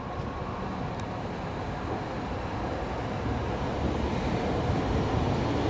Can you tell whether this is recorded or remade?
recorded